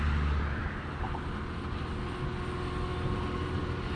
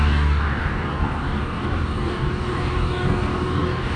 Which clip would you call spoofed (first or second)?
second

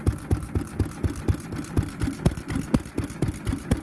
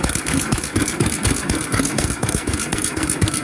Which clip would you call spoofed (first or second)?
second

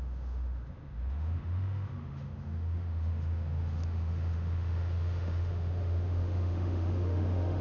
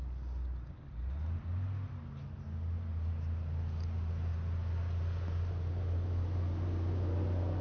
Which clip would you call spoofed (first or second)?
first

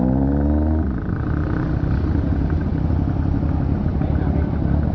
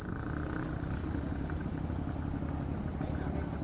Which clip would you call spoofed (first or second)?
first